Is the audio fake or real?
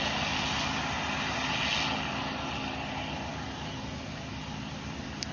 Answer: real